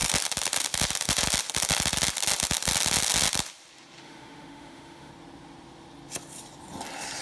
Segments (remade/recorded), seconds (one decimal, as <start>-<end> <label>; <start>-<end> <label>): 0.0-4.0 recorded; 4.0-5.1 remade; 5.1-7.2 recorded